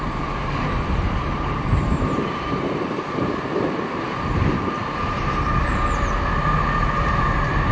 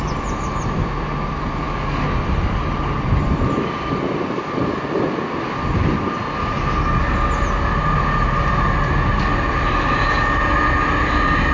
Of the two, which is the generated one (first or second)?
first